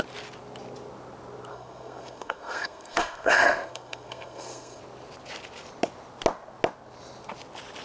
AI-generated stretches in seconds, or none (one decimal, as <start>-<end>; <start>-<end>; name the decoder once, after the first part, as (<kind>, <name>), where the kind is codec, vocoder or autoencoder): 1.5-4.8 (codec, SNAC)